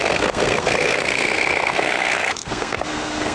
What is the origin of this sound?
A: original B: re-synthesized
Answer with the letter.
B